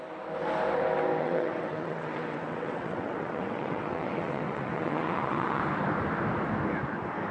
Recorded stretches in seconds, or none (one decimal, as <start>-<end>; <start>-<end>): 0.0-1.2; 5.6-7.3